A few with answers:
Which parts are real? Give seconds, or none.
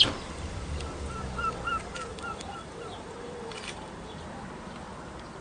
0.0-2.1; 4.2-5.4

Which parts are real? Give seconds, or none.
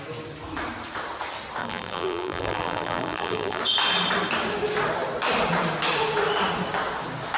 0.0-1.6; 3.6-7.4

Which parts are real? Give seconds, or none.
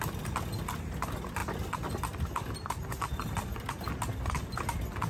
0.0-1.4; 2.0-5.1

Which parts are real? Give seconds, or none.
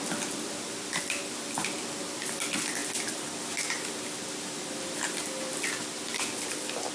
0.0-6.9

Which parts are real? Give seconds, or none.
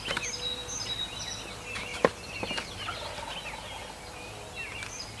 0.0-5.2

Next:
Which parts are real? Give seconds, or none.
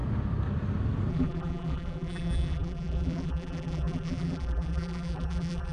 0.0-1.1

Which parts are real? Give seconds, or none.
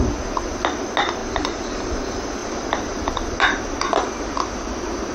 0.0-1.2; 1.8-2.4; 3.6-5.1